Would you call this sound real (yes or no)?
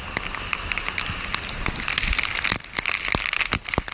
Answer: yes